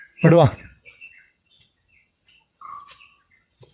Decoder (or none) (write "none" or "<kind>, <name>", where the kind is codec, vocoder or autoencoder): vocoder, WaveNeXt